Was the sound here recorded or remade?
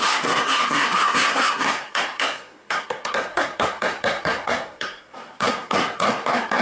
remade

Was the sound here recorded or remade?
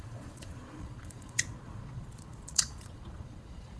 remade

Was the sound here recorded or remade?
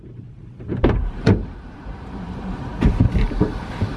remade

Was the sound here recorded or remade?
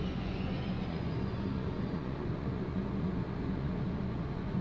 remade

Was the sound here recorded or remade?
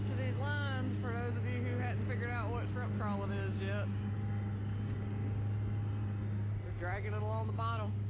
recorded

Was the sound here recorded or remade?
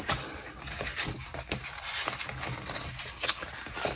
recorded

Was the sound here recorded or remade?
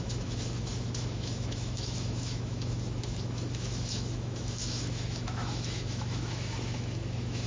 remade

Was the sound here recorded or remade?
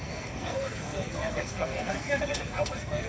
remade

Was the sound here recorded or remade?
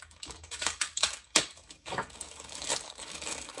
remade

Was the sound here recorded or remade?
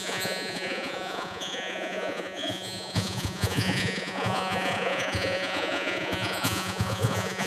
remade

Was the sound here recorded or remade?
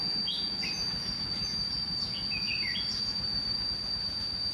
remade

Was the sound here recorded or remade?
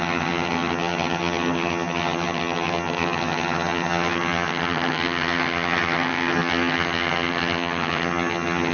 remade